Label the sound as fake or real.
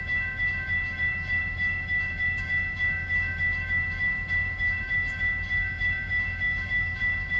fake